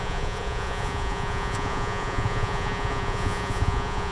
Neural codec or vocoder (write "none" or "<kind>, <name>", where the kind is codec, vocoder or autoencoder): vocoder, Vocos